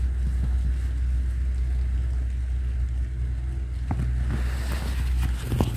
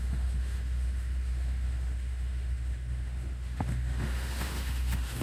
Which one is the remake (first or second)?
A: second